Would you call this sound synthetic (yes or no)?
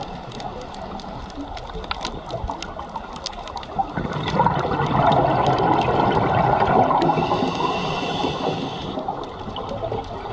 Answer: no